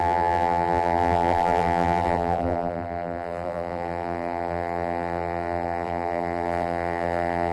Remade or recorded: remade